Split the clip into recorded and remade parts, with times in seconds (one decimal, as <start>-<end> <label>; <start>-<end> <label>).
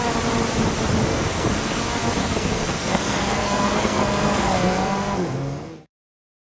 0.0-1.1 recorded; 1.1-1.8 remade; 1.8-2.2 recorded; 2.2-6.1 remade; 6.1-6.5 recorded